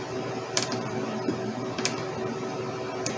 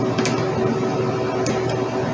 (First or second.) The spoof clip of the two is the first